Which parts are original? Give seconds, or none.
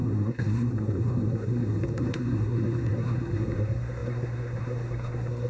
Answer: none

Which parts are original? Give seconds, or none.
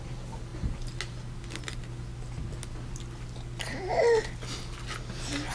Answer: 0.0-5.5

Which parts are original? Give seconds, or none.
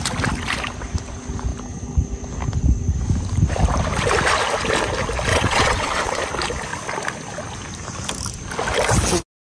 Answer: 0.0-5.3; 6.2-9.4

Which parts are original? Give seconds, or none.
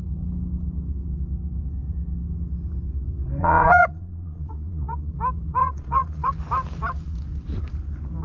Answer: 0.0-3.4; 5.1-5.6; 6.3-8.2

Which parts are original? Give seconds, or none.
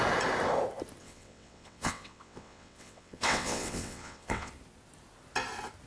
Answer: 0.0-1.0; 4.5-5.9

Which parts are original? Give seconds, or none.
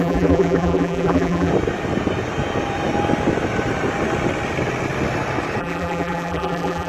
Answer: 1.5-5.6